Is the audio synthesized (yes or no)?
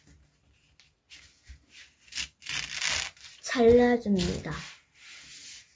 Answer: no